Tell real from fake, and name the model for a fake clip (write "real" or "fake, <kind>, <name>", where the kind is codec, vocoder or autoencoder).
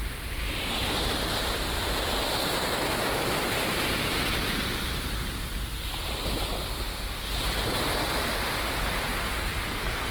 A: real